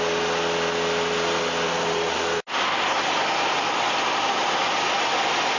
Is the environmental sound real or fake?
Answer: real